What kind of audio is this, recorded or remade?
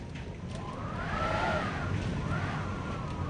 recorded